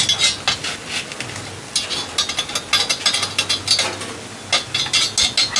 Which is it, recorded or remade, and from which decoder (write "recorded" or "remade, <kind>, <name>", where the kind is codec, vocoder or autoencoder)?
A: recorded